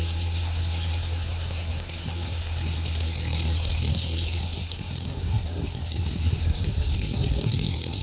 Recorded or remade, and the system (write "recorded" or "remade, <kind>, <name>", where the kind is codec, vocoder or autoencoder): remade, codec, SNAC